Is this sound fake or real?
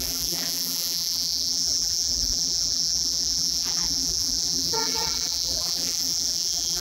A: fake